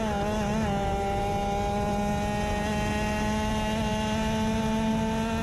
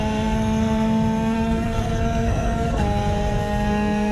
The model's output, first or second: second